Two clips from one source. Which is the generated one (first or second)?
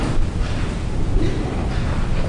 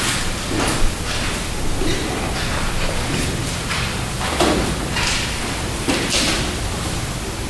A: first